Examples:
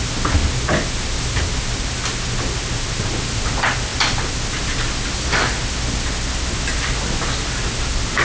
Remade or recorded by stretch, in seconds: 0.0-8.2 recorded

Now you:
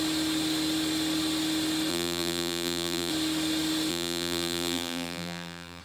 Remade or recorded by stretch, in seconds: 0.0-1.9 recorded; 1.9-3.1 remade; 3.1-3.9 recorded; 3.9-5.8 remade

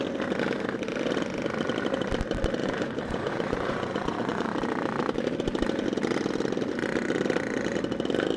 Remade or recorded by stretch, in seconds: 0.0-2.6 recorded; 2.6-4.5 remade; 4.5-8.4 recorded

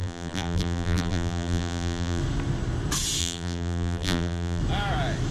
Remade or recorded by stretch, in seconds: 0.0-2.2 remade; 2.2-3.2 recorded; 3.2-4.6 remade; 4.6-5.3 recorded

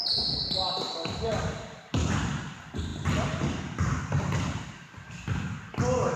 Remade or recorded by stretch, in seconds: 0.0-6.2 recorded

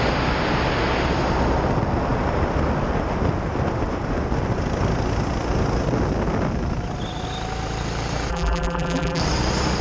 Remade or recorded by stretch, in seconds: 0.0-8.3 recorded; 8.3-9.2 remade; 9.2-9.8 recorded